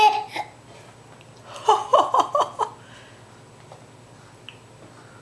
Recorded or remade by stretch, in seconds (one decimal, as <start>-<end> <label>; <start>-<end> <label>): 0.0-1.9 recorded; 1.9-2.6 remade; 2.6-5.2 recorded